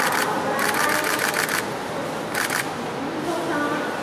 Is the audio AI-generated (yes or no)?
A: no